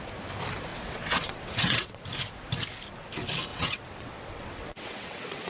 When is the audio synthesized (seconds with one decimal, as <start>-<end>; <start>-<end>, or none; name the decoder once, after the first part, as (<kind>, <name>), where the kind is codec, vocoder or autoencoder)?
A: 0.7-2.0 (vocoder, WaveNeXt); 3.5-5.5

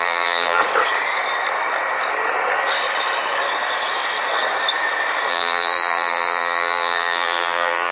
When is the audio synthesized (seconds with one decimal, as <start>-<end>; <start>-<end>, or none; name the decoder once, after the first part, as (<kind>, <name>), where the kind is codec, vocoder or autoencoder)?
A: 0.0-0.6 (vocoder, BigVGAN v2); 5.3-7.9

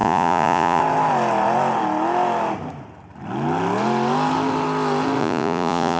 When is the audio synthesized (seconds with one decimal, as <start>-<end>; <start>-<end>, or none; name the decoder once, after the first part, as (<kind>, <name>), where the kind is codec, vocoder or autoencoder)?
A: 0.0-0.8 (vocoder, Vocos); 5.2-6.0

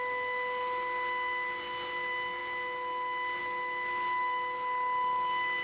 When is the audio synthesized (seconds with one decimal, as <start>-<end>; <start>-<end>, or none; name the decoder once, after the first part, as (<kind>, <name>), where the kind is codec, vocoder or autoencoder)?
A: none